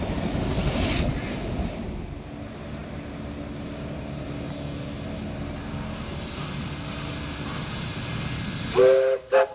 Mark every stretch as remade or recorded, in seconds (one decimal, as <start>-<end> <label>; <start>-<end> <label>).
0.0-9.5 recorded